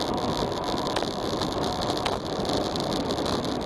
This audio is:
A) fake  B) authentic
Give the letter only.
B